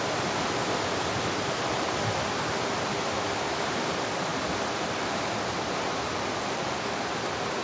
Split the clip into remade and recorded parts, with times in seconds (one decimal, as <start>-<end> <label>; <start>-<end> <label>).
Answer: 0.0-7.6 recorded